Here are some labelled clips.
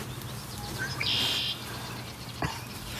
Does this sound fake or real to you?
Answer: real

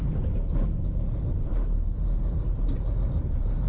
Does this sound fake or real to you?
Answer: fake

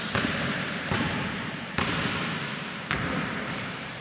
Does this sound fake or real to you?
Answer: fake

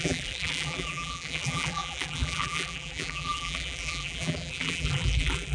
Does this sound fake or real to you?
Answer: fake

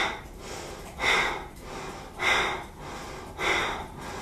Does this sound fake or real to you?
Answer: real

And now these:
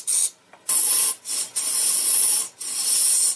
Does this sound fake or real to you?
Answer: real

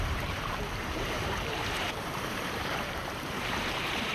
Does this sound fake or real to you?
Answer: fake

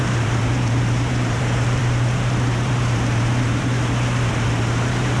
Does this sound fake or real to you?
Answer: fake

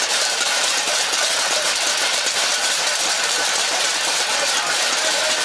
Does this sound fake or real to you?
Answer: fake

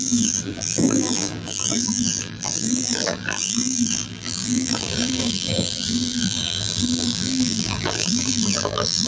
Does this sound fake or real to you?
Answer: fake